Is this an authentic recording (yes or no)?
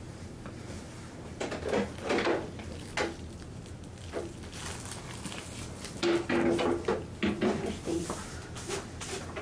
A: yes